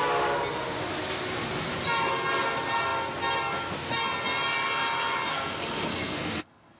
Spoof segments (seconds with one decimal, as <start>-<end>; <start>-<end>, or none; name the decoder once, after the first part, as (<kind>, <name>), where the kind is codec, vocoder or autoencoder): 5.3-6.8 (codec, SNAC)